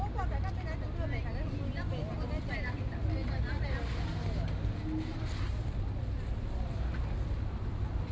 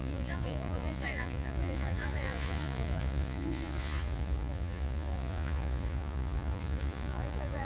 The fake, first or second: second